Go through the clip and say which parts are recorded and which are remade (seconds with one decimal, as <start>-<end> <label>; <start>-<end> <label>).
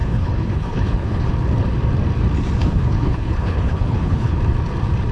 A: 0.0-1.3 remade; 1.3-2.6 recorded; 2.6-4.4 remade; 4.4-5.1 recorded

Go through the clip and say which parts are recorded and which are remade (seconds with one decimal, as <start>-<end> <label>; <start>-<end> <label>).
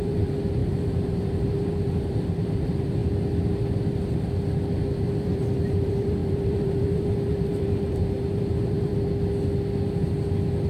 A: 0.0-3.0 remade; 3.0-5.0 recorded; 5.0-8.9 remade; 8.9-10.7 recorded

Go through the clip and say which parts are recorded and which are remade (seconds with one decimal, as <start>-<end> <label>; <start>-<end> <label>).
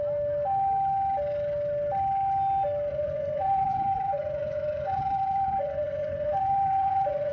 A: 0.0-2.9 recorded; 2.9-7.3 remade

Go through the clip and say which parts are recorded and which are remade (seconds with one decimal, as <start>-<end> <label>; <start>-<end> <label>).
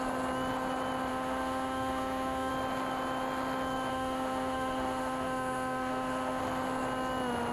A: 0.0-1.1 recorded; 1.1-2.5 remade; 2.5-3.9 recorded; 3.9-6.4 remade; 6.4-7.5 recorded